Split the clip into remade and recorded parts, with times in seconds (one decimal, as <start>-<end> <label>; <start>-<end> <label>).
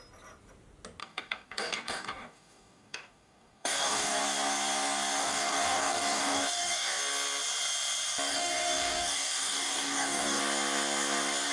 0.0-1.0 recorded; 1.0-4.2 remade; 4.2-5.2 recorded; 5.2-7.0 remade; 7.0-8.3 recorded; 8.3-10.4 remade; 10.4-11.5 recorded